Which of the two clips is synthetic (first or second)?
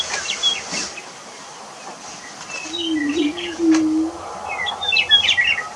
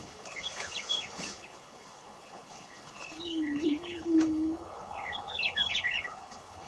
second